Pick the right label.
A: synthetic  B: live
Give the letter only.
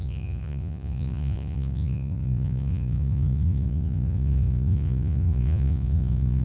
A